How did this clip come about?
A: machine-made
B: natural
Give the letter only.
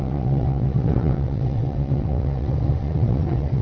A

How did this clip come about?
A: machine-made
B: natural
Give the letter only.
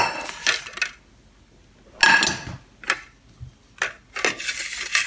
B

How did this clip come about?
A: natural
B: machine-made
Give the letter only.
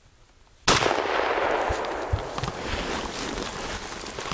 A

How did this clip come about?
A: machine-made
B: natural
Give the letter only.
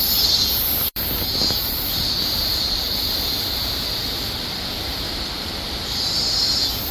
A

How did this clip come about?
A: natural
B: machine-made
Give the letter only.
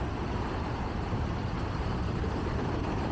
B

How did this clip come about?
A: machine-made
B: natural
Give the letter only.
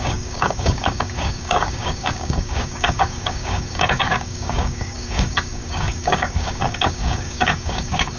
A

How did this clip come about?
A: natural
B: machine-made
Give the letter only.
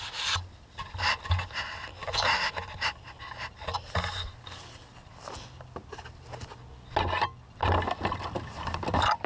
A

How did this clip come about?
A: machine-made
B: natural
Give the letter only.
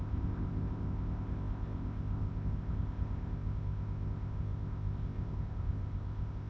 A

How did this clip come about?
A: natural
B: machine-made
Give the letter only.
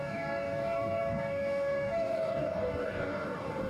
B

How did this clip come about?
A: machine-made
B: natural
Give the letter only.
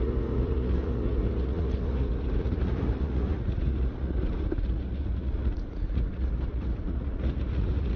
A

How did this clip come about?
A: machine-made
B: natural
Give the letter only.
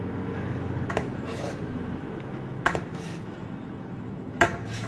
A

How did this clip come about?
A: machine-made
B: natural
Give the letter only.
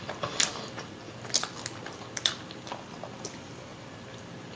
B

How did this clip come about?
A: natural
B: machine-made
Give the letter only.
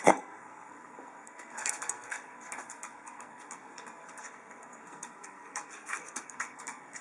B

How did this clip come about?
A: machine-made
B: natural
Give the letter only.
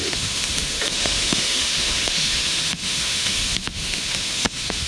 A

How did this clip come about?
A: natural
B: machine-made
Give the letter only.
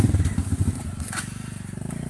B